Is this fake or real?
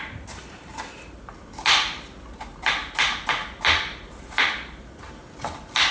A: real